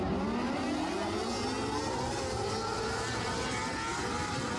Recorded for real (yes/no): yes